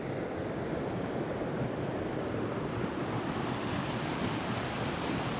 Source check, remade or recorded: recorded